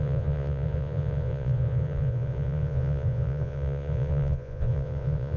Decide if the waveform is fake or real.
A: fake